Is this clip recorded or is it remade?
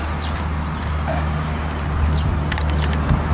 recorded